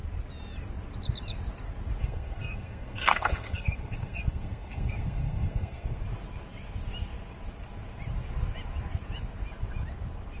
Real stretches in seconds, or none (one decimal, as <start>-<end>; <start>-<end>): 0.0-2.0; 6.0-10.4